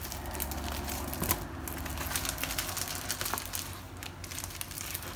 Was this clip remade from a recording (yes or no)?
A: no